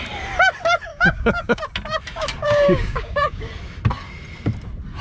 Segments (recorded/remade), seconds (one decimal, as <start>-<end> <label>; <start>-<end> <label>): 0.0-0.9 recorded; 0.9-1.6 remade; 1.6-2.4 recorded; 2.4-3.5 remade; 3.5-5.0 recorded